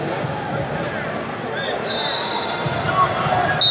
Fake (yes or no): no